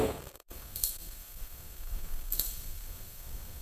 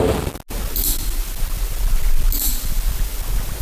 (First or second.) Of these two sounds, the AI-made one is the first